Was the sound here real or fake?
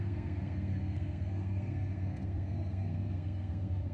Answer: fake